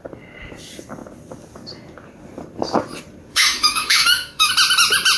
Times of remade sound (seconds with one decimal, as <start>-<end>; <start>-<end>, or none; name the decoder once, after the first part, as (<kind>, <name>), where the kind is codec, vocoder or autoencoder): 3.3-4.5 (autoencoder, DAC-VAE)